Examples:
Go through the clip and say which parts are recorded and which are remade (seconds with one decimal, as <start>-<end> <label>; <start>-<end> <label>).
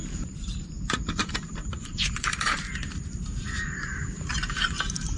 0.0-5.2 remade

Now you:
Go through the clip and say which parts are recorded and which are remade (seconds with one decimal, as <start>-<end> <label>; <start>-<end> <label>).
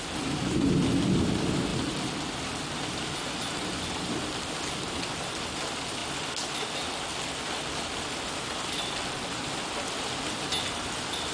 0.0-11.3 recorded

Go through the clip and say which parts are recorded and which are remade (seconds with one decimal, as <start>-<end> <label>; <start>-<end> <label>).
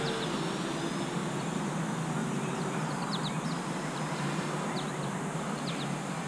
0.0-1.2 recorded; 1.2-1.8 remade; 1.8-2.2 recorded; 2.2-5.6 remade; 5.6-6.3 recorded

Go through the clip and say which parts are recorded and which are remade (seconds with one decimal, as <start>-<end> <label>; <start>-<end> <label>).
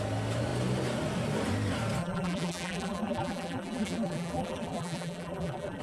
0.0-2.0 recorded; 2.0-5.8 remade